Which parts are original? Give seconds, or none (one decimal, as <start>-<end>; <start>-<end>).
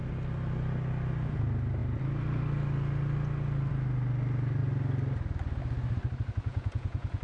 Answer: 0.0-6.5